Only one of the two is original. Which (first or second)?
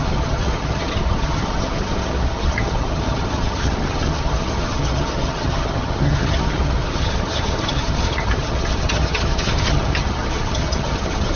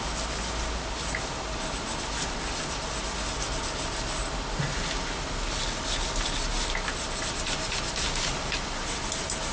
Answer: second